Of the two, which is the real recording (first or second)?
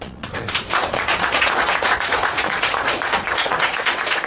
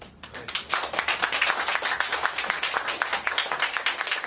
second